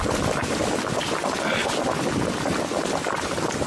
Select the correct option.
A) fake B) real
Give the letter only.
B